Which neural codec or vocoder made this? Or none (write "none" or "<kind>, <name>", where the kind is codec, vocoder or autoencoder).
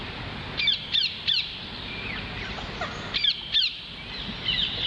none